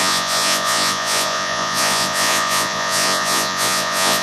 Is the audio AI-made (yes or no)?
yes